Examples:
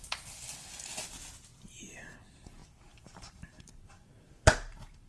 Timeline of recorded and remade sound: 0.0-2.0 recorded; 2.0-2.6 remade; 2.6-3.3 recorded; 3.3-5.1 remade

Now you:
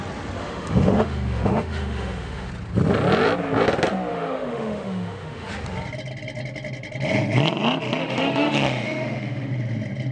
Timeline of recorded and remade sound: 0.0-0.4 recorded; 0.4-2.5 remade; 2.5-4.1 recorded; 4.1-5.5 remade; 5.5-8.0 recorded; 8.0-9.5 remade; 9.5-10.1 recorded

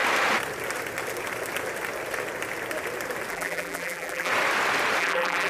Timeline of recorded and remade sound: 0.0-3.3 recorded; 3.3-4.3 remade; 4.3-5.0 recorded; 5.0-5.5 remade